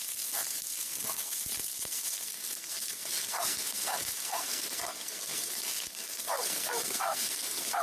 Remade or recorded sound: remade